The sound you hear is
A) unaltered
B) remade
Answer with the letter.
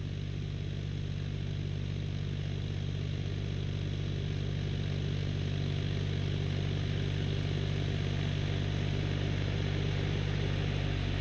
A